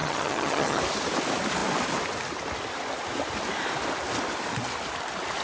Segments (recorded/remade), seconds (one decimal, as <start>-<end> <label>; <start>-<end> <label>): 0.0-0.8 remade; 0.8-5.4 recorded